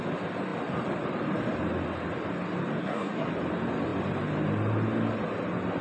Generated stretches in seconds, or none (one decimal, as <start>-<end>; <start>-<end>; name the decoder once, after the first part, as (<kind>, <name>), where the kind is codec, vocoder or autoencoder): 2.8-3.3 (codec, SNAC)